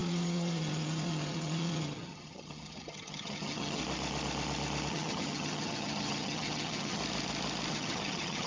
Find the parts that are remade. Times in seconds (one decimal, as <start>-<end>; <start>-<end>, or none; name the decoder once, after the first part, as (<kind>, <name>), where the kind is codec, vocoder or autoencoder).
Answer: 0.0-3.8 (vocoder, HiFi-GAN); 4.9-7.0; 7.7-8.5